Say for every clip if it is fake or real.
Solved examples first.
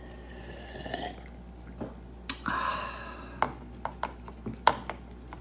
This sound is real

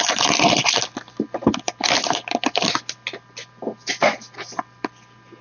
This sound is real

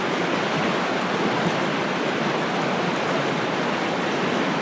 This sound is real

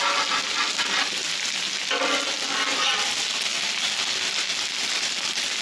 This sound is real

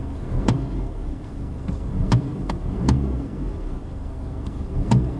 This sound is fake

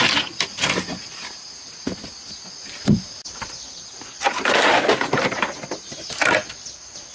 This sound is real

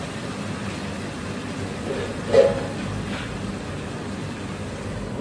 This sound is real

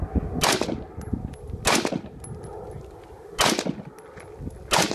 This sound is real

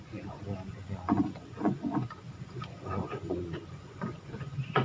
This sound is fake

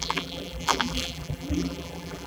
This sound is fake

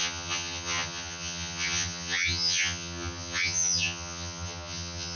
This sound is fake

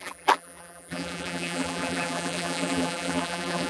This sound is fake